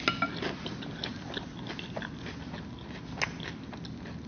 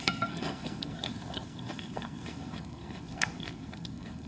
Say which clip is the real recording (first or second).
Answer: first